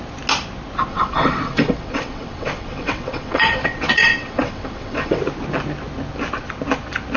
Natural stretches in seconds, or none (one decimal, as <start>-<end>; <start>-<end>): 0.0-0.9; 5.2-7.2